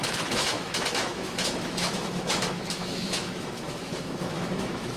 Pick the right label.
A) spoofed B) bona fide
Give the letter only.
A